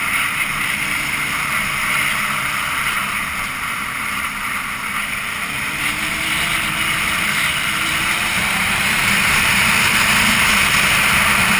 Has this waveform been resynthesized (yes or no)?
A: yes